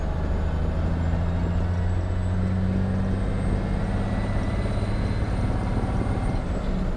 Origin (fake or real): real